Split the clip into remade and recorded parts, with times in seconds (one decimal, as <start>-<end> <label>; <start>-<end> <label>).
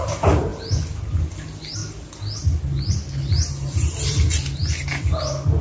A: 0.0-5.6 recorded